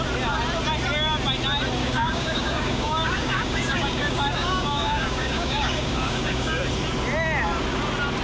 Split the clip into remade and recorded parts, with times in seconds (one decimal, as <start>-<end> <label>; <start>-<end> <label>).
0.0-1.8 recorded; 1.8-6.6 remade; 6.6-8.2 recorded